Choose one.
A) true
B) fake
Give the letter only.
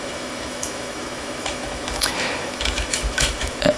B